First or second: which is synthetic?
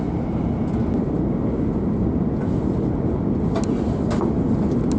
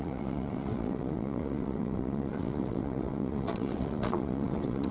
second